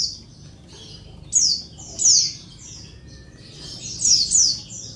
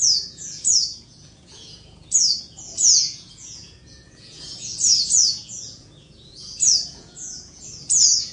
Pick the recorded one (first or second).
first